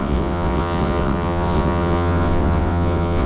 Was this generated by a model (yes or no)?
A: yes